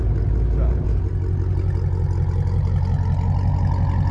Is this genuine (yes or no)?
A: yes